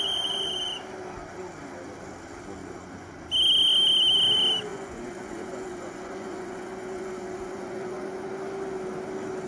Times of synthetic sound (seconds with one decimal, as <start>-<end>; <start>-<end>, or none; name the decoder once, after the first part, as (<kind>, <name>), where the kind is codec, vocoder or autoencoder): 2.6-3.1 (vocoder, Vocos); 4.7-8.3